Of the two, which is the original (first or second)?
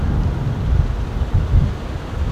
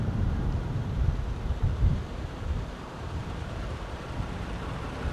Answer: first